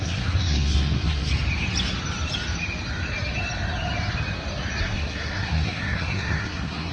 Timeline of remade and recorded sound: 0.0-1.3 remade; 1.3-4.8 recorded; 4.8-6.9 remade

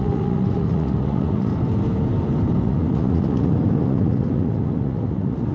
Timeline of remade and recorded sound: 0.0-1.5 remade; 1.5-2.6 recorded; 2.6-5.5 remade

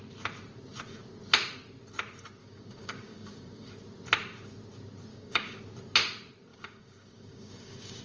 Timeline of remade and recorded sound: 0.0-2.4 recorded; 2.4-3.7 remade; 3.7-5.1 recorded; 5.1-5.6 remade; 5.6-6.5 recorded; 6.5-8.0 remade